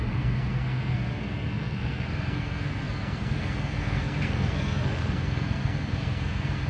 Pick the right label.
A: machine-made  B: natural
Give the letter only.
A